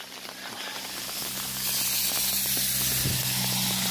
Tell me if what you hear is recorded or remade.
recorded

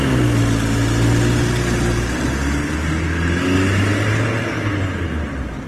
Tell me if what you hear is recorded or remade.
recorded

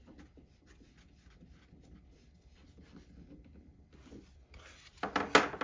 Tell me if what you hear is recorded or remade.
recorded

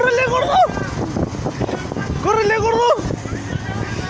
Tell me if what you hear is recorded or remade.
recorded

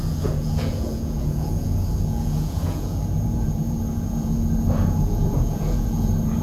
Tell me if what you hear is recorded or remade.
remade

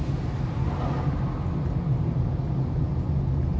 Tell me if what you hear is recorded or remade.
recorded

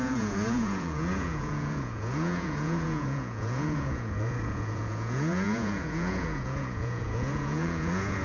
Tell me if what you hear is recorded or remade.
remade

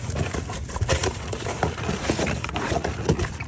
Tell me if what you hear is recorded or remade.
remade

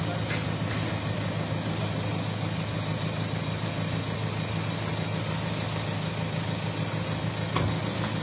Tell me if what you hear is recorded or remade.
recorded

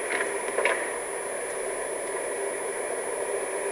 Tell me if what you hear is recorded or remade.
recorded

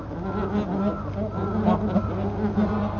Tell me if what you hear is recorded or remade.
recorded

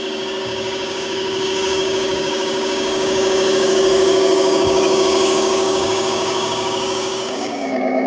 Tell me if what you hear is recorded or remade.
remade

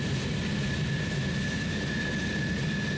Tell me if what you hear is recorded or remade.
recorded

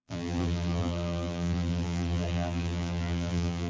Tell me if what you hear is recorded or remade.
remade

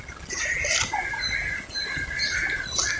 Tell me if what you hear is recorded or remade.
recorded